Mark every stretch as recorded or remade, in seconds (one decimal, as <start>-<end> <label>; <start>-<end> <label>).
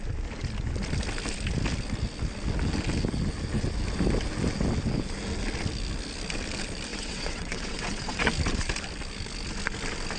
0.0-6.9 recorded; 6.9-8.3 remade; 8.3-10.2 recorded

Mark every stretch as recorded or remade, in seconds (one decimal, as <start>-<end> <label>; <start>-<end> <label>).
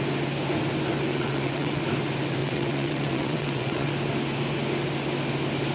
0.0-1.1 recorded; 1.1-1.8 remade; 1.8-2.4 recorded; 2.4-3.9 remade; 3.9-5.7 recorded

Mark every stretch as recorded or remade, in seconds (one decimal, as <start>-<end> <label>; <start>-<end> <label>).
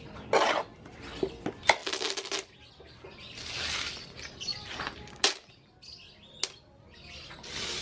0.0-7.8 recorded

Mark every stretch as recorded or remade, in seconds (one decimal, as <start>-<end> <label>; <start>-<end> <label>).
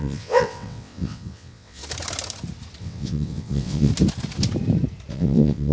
0.0-1.8 remade; 1.8-2.8 recorded; 2.8-3.9 remade; 3.9-5.1 recorded; 5.1-5.7 remade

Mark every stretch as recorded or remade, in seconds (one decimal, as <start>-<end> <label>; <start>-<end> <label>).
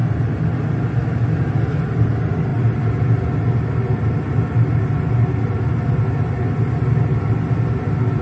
0.0-8.2 recorded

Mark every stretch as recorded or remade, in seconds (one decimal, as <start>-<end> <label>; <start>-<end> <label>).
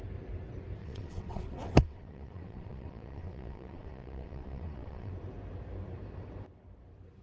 0.0-0.8 recorded; 0.8-5.1 remade; 5.1-7.2 recorded